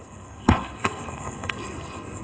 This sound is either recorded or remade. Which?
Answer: remade